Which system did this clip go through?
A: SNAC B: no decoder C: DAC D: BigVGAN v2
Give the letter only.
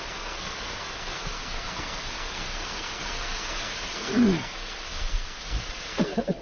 A